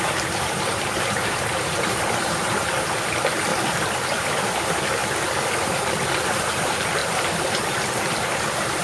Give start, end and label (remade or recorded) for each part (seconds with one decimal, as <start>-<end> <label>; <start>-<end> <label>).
0.0-3.5 remade; 3.5-4.3 recorded; 4.3-5.0 remade; 5.0-5.6 recorded; 5.6-8.8 remade